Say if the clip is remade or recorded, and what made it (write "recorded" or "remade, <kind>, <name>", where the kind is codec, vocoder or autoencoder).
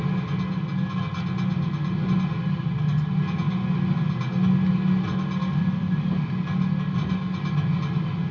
recorded